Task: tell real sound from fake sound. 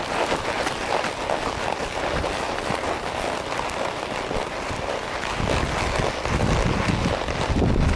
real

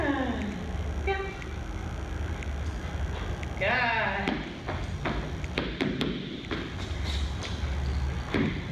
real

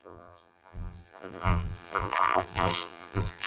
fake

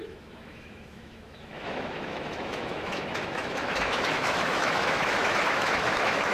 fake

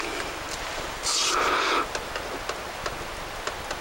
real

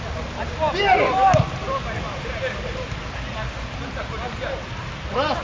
real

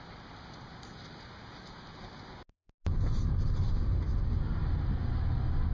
real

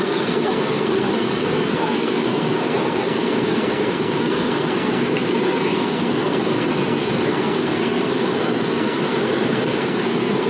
fake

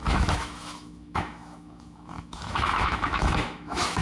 fake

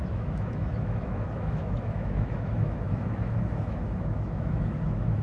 fake